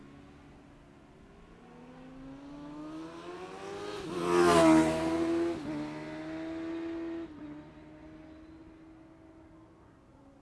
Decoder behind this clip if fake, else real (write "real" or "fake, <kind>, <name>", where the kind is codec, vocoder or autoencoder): real